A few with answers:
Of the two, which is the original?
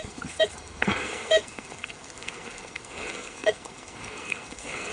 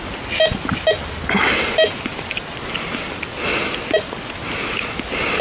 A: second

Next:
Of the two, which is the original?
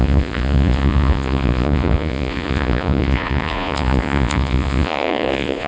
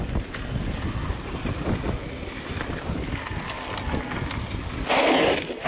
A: second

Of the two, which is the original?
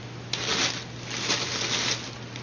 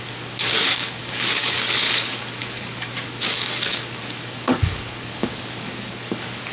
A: first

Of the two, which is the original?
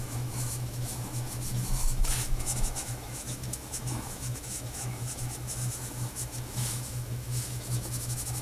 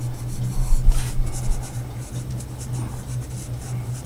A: second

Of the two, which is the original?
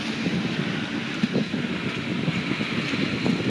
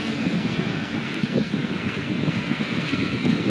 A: first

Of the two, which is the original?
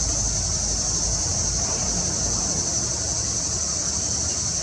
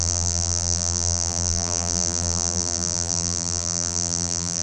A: first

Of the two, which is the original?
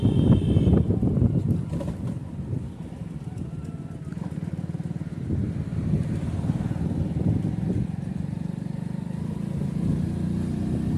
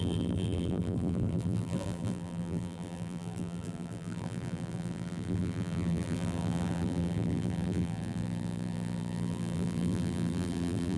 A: first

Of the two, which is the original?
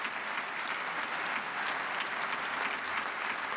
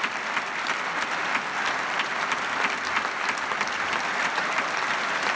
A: first